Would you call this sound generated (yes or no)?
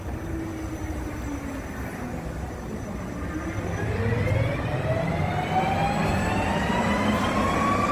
no